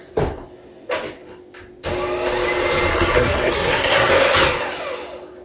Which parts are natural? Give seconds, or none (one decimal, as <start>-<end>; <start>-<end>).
0.0-2.9; 4.1-5.4